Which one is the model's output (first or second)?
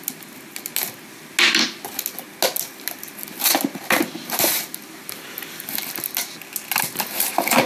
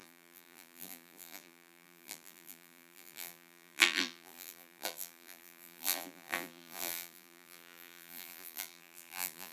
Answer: second